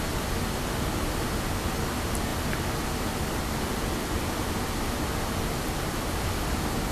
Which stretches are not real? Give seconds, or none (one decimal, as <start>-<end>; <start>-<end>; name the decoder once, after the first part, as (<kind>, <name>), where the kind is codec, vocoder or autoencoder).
none